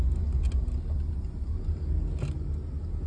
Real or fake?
real